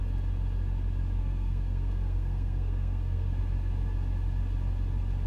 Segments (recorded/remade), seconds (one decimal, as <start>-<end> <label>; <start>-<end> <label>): 0.0-1.2 recorded; 1.2-3.4 remade; 3.4-5.3 recorded